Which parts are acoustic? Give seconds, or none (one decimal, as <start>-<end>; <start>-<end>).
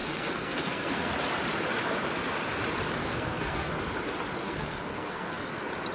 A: 1.1-3.0; 3.7-4.4; 5.5-5.9